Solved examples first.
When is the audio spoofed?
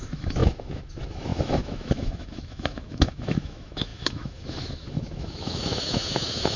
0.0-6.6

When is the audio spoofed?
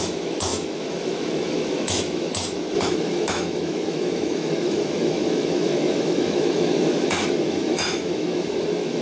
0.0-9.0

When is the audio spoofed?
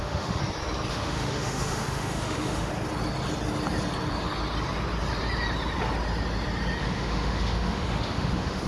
0.0-0.4; 0.9-2.7; 6.8-8.7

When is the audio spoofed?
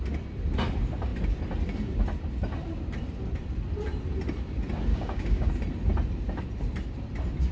4.9-5.5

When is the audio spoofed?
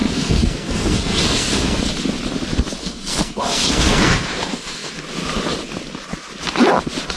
0.0-1.9; 2.8-4.9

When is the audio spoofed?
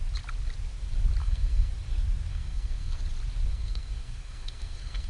1.2-1.7; 2.3-3.0; 3.5-5.1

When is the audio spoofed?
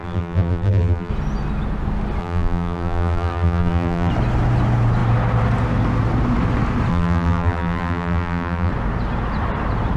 0.0-1.1; 2.2-4.1; 6.9-8.7